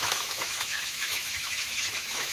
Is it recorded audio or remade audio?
remade